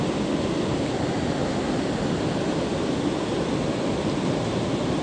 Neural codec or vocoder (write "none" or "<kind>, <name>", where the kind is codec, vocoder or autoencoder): none